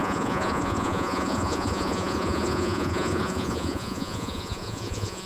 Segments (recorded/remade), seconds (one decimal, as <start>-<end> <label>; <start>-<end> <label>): 0.0-5.3 remade